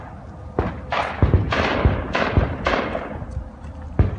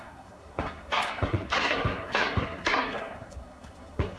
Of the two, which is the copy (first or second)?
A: second